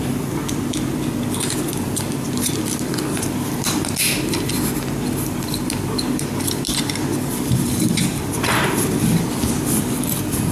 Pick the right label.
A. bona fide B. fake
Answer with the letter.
B